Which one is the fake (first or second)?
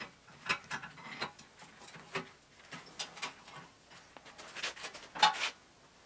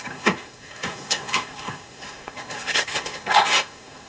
second